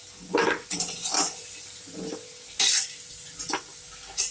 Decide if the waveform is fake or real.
real